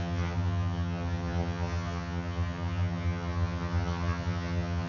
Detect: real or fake fake